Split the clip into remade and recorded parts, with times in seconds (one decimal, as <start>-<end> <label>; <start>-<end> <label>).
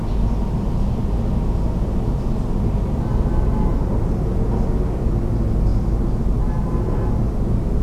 0.0-7.8 recorded